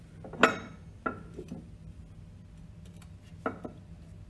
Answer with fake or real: real